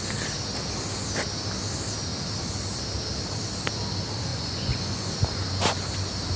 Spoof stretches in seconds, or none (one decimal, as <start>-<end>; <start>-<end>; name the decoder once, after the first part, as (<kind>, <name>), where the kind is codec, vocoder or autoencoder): 4.3-5.1 (vocoder, Vocos)